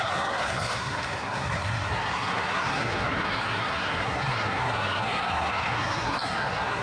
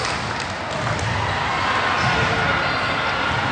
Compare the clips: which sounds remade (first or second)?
first